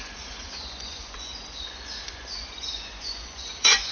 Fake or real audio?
fake